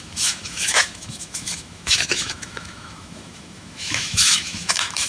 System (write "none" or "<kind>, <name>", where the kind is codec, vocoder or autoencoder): autoencoder, DAC-VAE